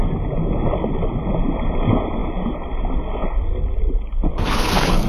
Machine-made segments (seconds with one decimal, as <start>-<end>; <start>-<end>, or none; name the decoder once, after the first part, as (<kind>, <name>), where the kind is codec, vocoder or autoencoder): 4.3-5.1 (codec, SNAC)